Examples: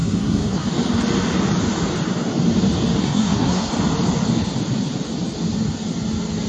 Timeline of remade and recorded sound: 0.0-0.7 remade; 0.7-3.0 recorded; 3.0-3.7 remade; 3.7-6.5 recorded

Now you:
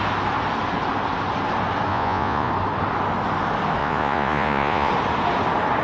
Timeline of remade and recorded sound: 0.0-1.9 recorded; 1.9-2.5 remade; 2.5-3.8 recorded; 3.8-4.9 remade; 4.9-5.8 recorded

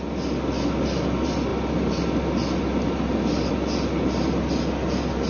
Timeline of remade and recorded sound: 0.0-5.3 recorded

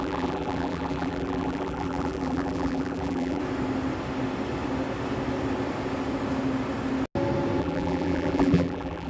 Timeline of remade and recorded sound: 0.0-3.4 remade; 3.4-7.6 recorded; 7.6-9.1 remade